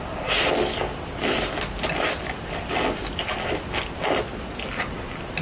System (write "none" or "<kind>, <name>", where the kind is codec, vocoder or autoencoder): none